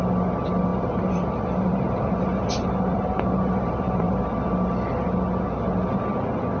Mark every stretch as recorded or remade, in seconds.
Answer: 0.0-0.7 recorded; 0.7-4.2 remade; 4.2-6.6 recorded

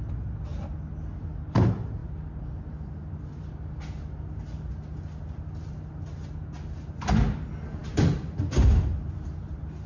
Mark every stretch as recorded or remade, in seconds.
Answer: 0.0-9.9 recorded

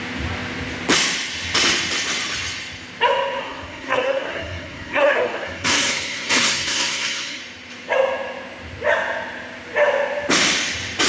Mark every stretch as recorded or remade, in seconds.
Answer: 0.0-3.4 recorded; 3.4-7.4 remade; 7.4-11.1 recorded